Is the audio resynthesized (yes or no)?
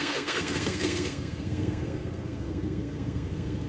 yes